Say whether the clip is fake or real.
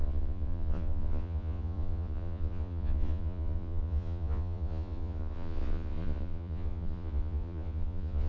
fake